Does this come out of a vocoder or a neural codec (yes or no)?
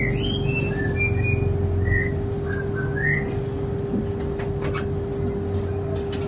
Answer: no